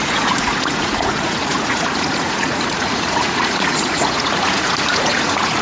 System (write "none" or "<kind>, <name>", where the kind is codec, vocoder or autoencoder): vocoder, Vocos